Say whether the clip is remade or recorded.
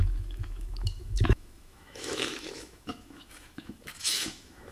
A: remade